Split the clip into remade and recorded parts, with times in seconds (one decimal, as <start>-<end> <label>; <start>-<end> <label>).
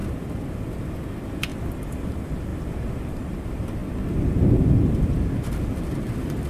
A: 0.0-1.5 remade; 1.5-2.1 recorded; 2.1-2.5 remade; 2.5-3.1 recorded; 3.1-3.8 remade; 3.8-4.3 recorded; 4.3-6.5 remade